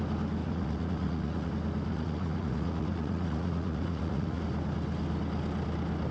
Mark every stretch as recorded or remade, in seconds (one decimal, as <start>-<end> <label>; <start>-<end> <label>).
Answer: 0.0-0.4 recorded; 0.4-1.5 remade; 1.5-1.9 recorded; 1.9-4.4 remade; 4.4-6.1 recorded